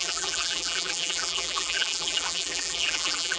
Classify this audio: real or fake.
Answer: fake